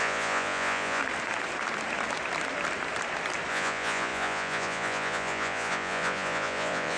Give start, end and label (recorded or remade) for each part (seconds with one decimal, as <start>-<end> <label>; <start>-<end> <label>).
0.0-1.0 remade; 1.0-3.5 recorded; 3.5-7.0 remade